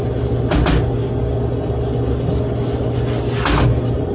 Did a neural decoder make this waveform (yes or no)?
no